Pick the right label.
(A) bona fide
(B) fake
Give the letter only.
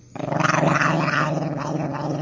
A